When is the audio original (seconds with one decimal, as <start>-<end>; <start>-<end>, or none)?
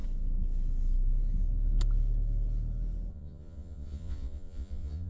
0.0-3.1